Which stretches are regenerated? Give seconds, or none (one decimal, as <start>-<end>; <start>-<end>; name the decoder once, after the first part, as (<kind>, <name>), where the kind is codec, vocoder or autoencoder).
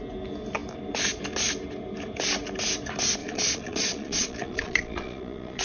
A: 3.2-5.6 (vocoder, Vocos)